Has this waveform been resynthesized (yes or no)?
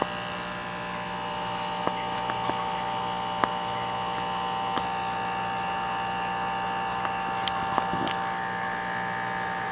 no